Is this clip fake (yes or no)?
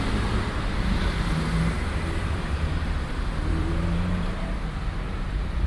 yes